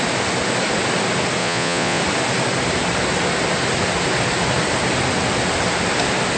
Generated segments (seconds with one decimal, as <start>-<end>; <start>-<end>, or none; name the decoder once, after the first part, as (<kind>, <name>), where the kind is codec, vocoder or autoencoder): 1.4-2.0 (vocoder, Vocos)